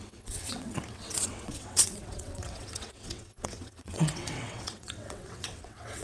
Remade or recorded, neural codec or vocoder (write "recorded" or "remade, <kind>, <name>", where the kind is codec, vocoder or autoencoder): remade, vocoder, WaveNeXt